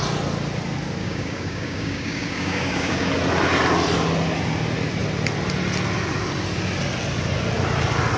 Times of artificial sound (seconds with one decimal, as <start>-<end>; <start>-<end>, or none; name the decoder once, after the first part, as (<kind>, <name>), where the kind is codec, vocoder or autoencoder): 1.0-3.1 (codec, DAC)